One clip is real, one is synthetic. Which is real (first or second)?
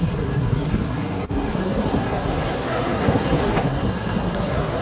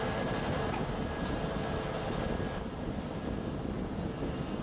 second